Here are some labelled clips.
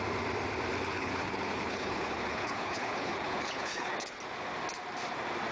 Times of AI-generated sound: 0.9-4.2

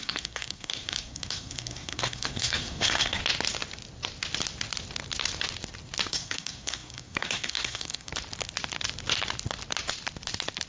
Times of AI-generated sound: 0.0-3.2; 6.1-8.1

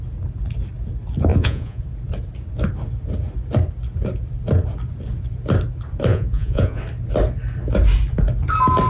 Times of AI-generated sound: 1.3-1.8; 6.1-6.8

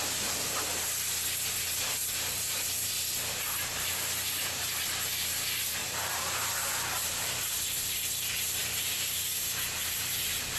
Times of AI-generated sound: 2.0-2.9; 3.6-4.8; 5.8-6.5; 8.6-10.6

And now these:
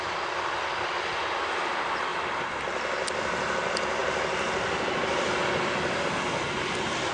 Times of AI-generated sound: none

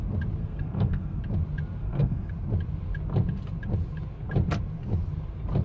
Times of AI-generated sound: 0.4-1.2; 1.8-2.3

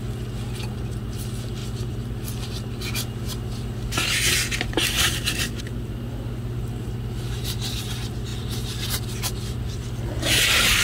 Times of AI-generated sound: none

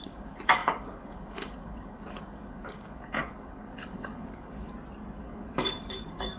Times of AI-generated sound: 0.0-4.7; 5.2-6.4